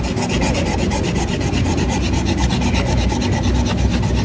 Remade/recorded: recorded